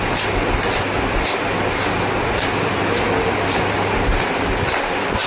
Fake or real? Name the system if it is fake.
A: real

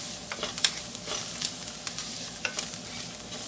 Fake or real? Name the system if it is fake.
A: real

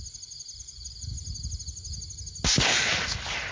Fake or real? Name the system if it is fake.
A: real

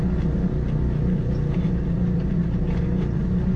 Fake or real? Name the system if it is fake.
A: real